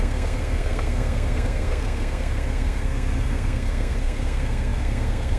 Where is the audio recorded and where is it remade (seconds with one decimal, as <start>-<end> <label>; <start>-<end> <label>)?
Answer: 0.0-5.4 remade